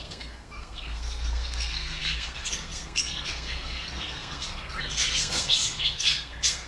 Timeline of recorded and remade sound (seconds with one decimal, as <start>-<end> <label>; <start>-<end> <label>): 0.0-6.7 remade